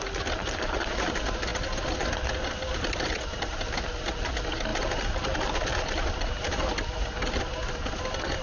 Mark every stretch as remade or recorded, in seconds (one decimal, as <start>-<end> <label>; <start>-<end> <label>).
0.0-8.4 recorded